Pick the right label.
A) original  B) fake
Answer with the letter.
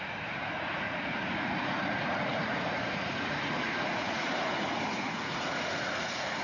B